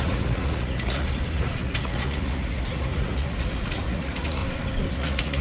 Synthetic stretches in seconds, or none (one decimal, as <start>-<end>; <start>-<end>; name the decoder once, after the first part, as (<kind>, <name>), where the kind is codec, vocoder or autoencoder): 0.0-4.4 (vocoder, Vocos); 4.9-5.4

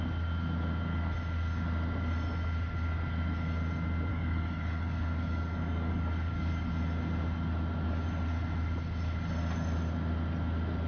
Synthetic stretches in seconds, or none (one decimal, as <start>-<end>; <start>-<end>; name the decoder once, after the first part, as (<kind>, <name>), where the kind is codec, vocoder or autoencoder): 4.1-6.7 (codec, DAC)

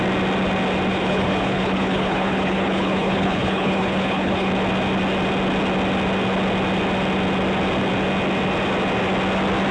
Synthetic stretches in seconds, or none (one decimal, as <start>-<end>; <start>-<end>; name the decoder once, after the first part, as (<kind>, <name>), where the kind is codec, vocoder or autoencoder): 0.9-4.5 (codec, HILCodec)

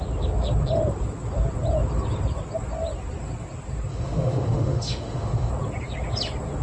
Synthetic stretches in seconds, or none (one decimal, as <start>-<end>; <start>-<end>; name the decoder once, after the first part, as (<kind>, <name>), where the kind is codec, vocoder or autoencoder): 3.9-5.5 (autoencoder, DAC-VAE)

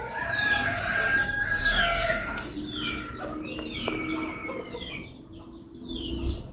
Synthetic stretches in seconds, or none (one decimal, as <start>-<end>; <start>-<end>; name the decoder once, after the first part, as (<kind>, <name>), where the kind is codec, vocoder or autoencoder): 1.6-2.5 (codec, SNAC)

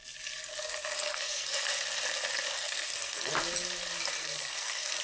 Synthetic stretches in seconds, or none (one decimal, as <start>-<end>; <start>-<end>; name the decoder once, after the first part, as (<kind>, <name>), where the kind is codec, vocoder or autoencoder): 0.5-1.7 (codec, SNAC); 2.5-3.3; 4.2-5.0

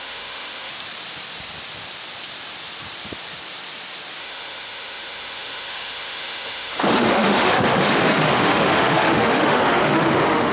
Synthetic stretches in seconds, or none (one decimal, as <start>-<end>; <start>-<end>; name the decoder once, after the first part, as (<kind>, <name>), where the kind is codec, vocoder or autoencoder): 0.0-0.7 (autoencoder, DAC-VAE); 4.2-10.5

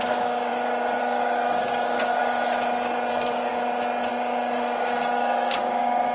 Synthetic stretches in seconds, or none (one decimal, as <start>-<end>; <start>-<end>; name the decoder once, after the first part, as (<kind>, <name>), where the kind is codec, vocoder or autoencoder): 0.0-0.5 (codec, DAC); 1.0-2.2; 3.1-3.5; 4.1-6.1